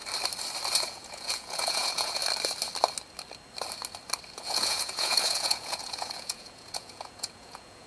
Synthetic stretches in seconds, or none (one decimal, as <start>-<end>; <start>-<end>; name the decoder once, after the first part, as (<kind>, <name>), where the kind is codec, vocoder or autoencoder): 0.8-2.2 (vocoder, Vocos); 4.3-7.9